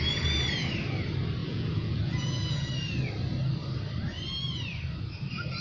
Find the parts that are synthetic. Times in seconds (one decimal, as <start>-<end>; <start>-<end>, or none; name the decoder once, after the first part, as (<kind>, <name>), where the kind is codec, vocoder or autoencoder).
1.4-2.7 (vocoder, Vocos)